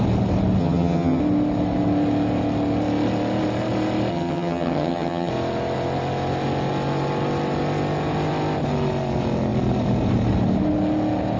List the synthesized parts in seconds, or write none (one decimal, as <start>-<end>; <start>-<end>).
0.6-1.2; 4.1-5.3